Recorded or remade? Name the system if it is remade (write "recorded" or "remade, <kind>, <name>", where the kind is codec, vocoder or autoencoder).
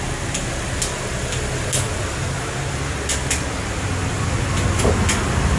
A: recorded